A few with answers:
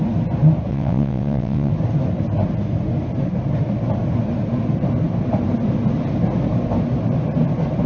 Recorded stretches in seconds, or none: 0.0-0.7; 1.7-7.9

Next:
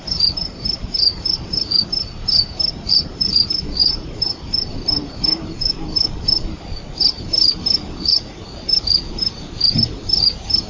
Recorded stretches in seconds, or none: none

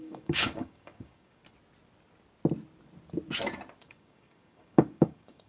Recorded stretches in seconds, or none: 1.4-3.8

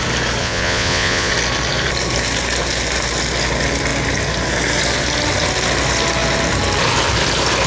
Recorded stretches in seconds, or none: 0.0-0.4; 1.3-7.7

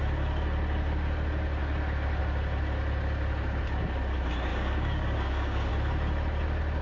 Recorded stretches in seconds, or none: 0.0-4.5; 5.7-6.8

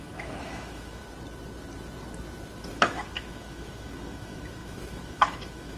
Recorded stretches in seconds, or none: 1.0-2.7

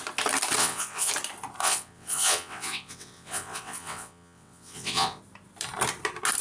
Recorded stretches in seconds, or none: 0.0-0.6; 1.1-1.6; 5.2-6.4